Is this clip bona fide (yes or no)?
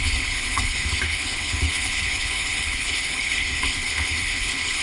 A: no